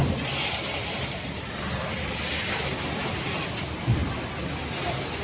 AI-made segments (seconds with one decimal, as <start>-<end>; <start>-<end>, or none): none